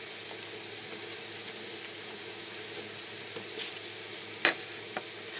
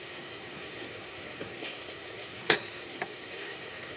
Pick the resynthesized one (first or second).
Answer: second